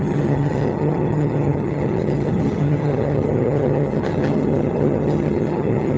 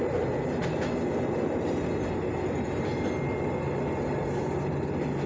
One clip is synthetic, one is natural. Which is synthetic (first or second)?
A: first